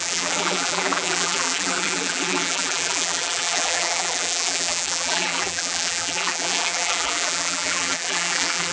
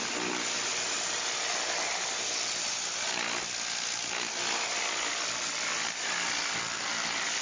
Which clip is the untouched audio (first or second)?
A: second